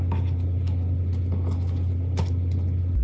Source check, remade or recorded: recorded